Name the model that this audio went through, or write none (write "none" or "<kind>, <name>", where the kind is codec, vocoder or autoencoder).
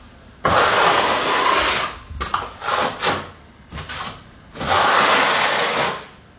none